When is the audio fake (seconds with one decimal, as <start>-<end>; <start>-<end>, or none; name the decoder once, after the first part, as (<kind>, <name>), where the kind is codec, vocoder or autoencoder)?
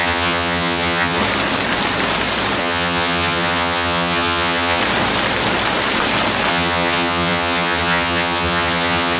0.0-1.2 (vocoder, HiFi-GAN); 2.6-4.8; 6.5-9.2